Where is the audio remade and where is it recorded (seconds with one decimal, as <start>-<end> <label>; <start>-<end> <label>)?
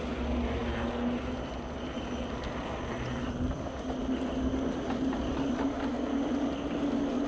0.0-7.3 recorded